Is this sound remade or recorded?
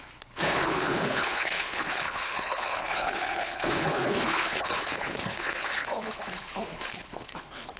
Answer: remade